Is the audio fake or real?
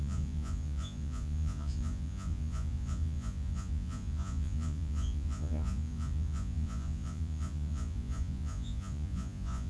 fake